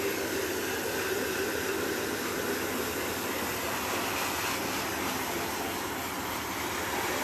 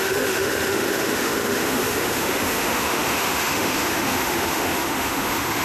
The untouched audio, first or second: first